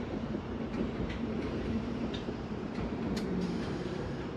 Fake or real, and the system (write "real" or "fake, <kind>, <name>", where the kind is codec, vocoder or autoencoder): fake, vocoder, BigVGAN v2